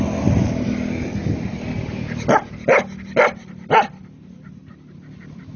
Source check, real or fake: real